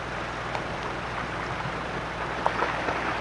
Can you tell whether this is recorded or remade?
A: recorded